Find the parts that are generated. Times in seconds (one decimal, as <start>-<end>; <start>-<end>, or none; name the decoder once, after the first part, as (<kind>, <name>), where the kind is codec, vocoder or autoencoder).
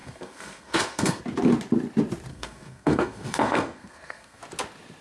0.0-1.2 (codec, SNAC); 2.3-4.4